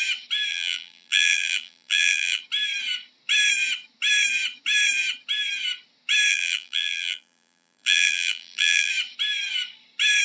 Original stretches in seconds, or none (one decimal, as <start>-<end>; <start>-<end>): 0.0-0.5; 2.4-6.3; 8.9-10.2